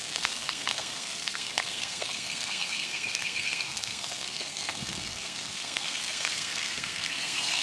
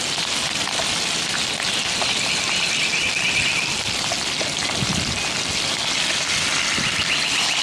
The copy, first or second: first